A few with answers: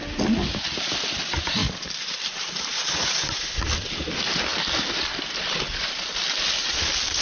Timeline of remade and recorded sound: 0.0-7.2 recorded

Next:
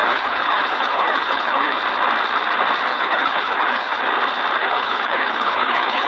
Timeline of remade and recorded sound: 0.0-1.8 remade; 1.8-2.9 recorded; 2.9-4.0 remade; 4.0-4.6 recorded; 4.6-6.1 remade

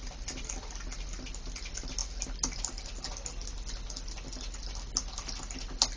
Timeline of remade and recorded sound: 0.0-6.0 recorded

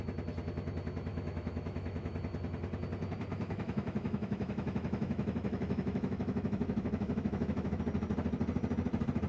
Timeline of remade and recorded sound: 0.0-1.1 recorded; 1.1-2.2 remade; 2.2-3.3 recorded; 3.3-7.8 remade; 7.8-9.3 recorded

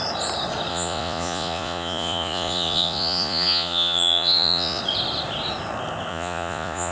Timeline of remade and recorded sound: 0.0-0.7 recorded; 0.7-4.8 remade; 4.8-6.1 recorded; 6.1-6.9 remade

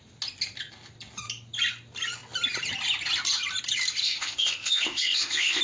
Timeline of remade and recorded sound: 0.0-4.0 recorded; 4.0-5.6 remade